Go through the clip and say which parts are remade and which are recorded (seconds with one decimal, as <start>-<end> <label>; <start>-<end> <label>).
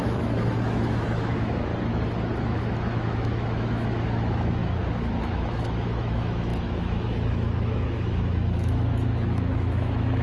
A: 0.0-1.7 remade; 1.7-2.4 recorded; 2.4-10.2 remade